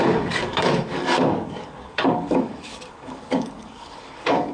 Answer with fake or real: fake